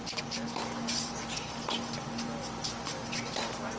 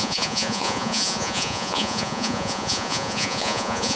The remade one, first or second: second